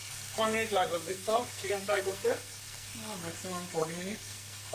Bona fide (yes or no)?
no